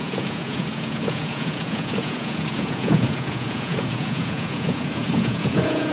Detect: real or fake fake